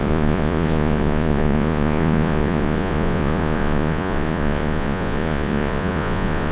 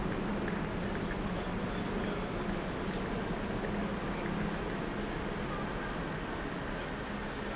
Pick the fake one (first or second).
first